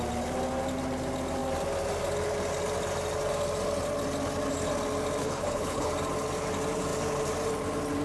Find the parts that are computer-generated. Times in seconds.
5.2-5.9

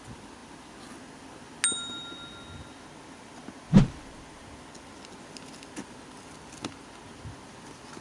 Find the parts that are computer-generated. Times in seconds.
none